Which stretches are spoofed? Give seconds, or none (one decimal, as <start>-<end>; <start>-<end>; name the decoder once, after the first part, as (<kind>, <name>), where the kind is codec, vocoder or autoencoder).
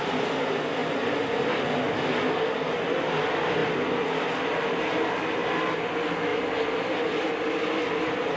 none